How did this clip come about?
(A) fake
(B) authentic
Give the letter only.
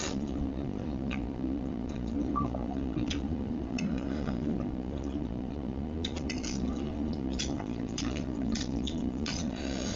A